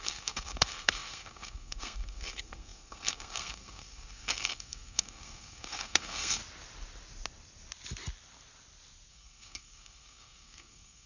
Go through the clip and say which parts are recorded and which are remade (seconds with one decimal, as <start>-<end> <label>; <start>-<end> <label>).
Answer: 0.0-6.4 remade; 6.4-9.1 recorded; 9.1-11.1 remade